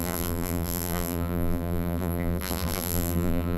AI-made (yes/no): yes